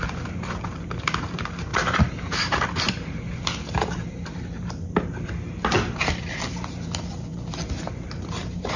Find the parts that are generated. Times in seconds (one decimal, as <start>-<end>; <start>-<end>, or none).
none